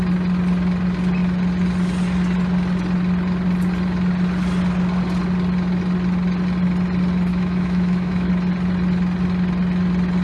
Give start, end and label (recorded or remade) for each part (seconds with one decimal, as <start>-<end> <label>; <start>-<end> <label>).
0.0-7.3 recorded; 7.3-8.3 remade; 8.3-10.2 recorded